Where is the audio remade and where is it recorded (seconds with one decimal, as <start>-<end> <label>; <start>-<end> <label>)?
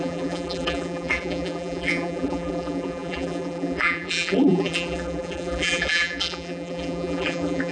0.0-7.7 remade